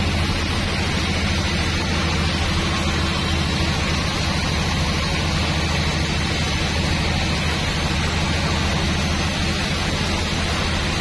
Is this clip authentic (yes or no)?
yes